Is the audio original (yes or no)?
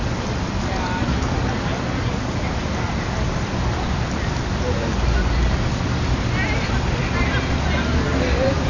yes